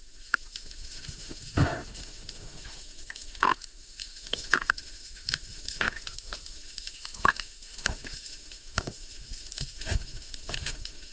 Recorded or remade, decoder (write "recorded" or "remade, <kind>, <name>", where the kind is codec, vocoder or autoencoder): remade, autoencoder, DAC-VAE